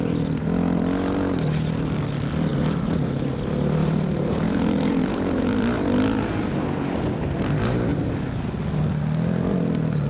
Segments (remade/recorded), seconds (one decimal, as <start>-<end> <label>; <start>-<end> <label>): 0.0-2.5 recorded; 2.5-3.3 remade; 3.3-3.8 recorded; 3.8-5.4 remade; 5.4-10.1 recorded